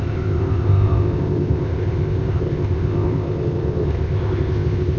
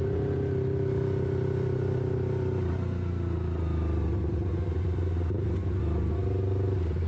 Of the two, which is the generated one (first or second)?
first